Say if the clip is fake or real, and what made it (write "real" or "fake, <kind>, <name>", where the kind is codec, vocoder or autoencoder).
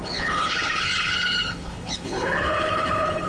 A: fake, codec, HILCodec